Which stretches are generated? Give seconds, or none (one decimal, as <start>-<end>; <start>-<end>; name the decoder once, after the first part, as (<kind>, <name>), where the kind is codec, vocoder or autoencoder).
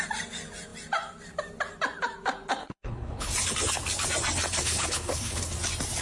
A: 2.6-3.3 (codec, HILCodec); 4.6-5.5